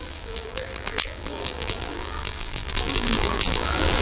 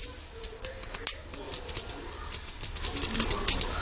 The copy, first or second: first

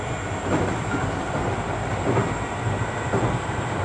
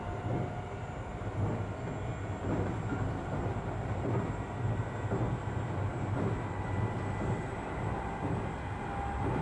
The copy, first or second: first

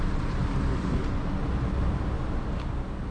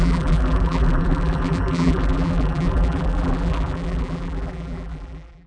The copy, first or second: second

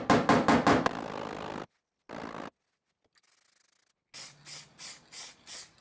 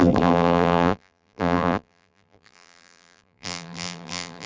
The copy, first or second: second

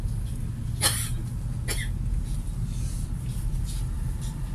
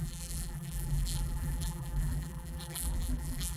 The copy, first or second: second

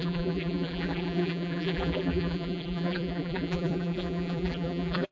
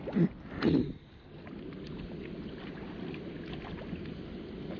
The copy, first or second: first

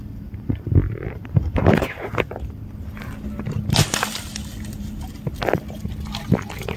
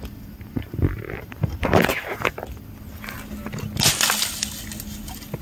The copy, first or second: first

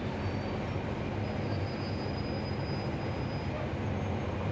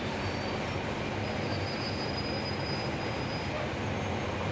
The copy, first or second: second